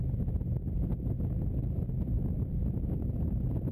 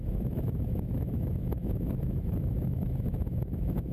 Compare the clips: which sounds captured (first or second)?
first